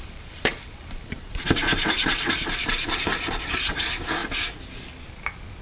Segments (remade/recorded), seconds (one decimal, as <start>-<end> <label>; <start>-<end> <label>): 0.0-4.2 remade; 4.2-5.6 recorded